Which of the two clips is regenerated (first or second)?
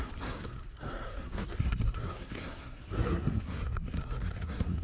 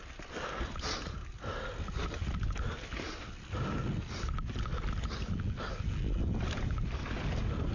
first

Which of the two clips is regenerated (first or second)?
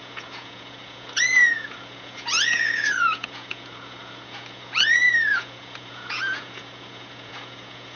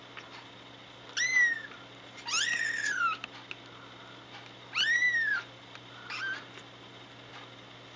first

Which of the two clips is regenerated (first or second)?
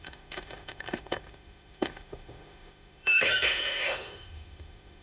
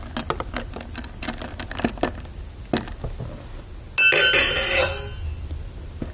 first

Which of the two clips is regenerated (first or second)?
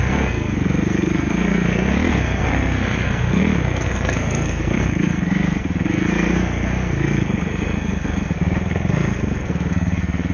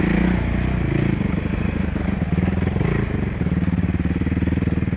first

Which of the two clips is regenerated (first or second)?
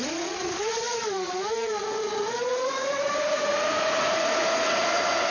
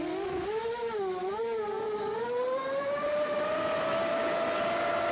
first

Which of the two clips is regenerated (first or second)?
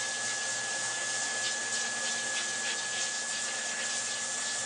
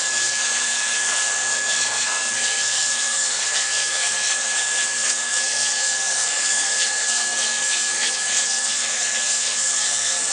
second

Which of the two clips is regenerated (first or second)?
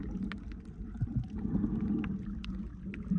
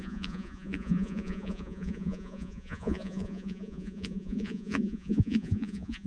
second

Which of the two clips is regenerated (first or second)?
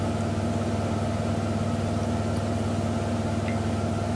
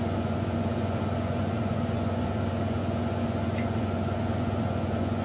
second